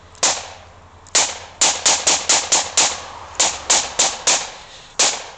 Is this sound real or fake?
real